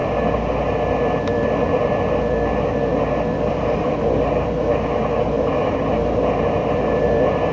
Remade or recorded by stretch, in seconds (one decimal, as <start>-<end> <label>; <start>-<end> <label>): 0.0-7.5 recorded